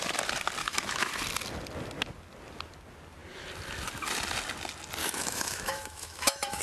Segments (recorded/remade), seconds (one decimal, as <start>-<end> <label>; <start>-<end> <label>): 0.0-0.6 recorded; 0.6-1.1 remade; 1.1-5.0 recorded; 5.0-6.6 remade